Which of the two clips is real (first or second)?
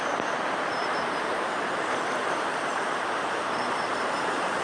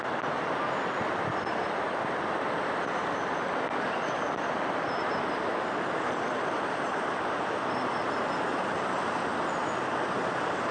second